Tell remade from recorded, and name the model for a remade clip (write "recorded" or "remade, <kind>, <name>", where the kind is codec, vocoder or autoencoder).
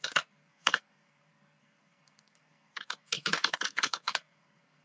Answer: remade, codec, SNAC